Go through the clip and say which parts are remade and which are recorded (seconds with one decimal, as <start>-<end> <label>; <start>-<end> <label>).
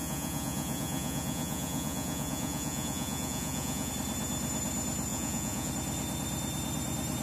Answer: 0.0-3.9 remade; 3.9-5.1 recorded; 5.1-5.7 remade; 5.7-7.2 recorded